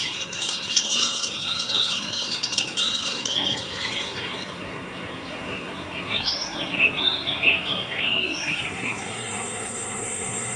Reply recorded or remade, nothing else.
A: remade